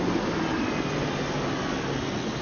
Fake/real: real